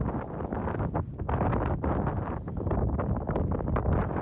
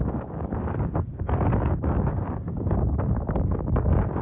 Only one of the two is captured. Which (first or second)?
first